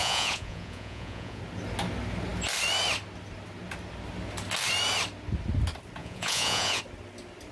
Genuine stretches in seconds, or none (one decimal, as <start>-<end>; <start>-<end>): 1.4-6.0; 6.8-7.5